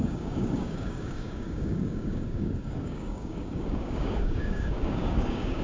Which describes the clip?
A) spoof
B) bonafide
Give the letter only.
A